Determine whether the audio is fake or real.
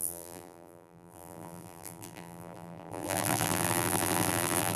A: fake